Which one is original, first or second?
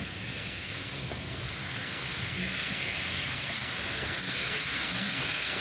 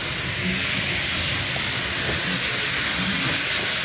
second